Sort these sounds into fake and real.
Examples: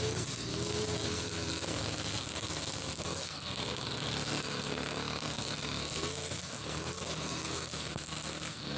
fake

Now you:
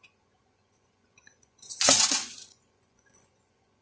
fake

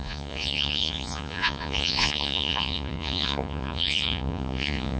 fake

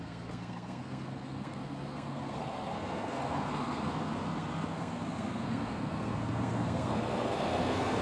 fake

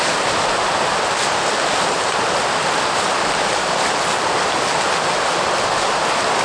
fake